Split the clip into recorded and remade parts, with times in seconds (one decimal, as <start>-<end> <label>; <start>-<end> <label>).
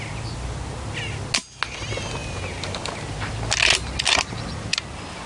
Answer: 0.0-5.3 recorded